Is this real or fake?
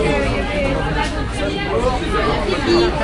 real